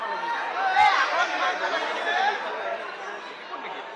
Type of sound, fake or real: real